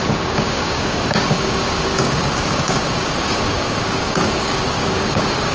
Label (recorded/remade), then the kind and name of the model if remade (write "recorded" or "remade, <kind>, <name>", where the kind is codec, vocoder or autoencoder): remade, codec, DAC